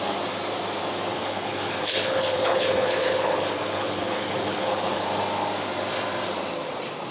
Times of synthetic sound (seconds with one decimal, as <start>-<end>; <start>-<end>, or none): 1.1-5.0